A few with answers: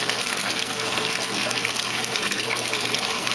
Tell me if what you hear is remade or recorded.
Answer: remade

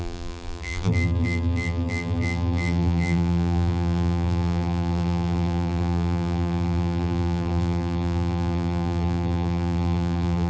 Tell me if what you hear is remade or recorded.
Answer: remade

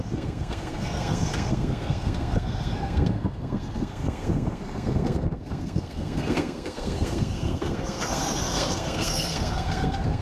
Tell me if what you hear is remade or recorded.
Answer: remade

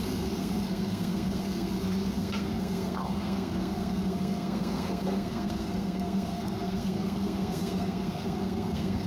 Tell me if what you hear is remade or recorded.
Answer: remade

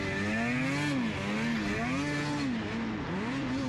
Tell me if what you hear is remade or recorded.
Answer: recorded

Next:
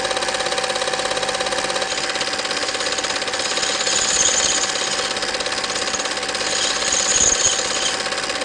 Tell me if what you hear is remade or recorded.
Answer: recorded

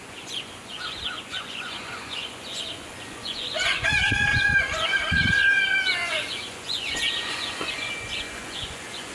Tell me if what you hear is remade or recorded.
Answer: remade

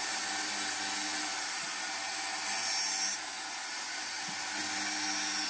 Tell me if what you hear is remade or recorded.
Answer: recorded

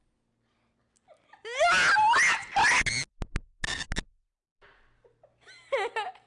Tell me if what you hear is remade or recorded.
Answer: recorded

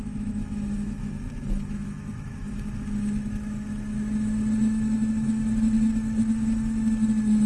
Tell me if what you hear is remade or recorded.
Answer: remade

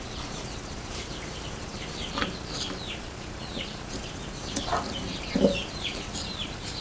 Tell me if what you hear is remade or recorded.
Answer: remade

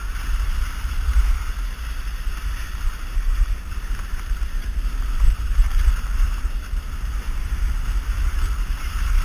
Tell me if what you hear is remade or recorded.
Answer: remade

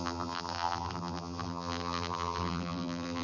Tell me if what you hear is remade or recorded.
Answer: remade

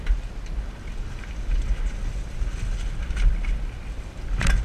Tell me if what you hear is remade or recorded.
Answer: recorded